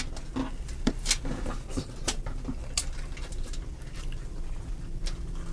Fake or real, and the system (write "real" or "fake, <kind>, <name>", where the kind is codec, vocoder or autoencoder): real